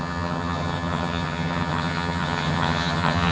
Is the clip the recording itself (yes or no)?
no